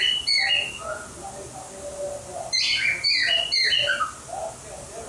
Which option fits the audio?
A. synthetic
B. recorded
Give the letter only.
B